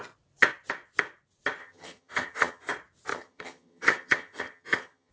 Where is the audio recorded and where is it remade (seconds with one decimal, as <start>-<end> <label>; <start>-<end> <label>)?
0.0-1.6 recorded; 1.6-2.7 remade; 2.7-3.1 recorded; 3.1-5.1 remade